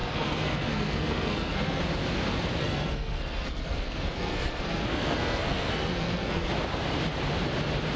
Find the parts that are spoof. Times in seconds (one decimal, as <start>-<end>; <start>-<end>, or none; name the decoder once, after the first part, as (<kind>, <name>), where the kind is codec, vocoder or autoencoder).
0.0-1.8 (codec, SNAC); 2.6-6.5